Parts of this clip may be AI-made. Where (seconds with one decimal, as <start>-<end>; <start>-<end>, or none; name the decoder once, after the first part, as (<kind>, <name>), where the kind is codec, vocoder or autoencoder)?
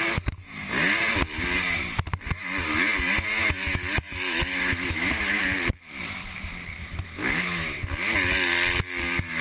3.4-5.4 (autoencoder, DAC-VAE); 6.8-7.8